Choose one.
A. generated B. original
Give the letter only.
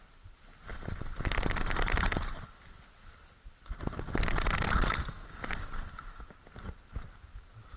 B